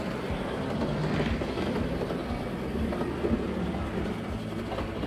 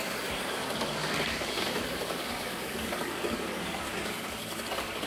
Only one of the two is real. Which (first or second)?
first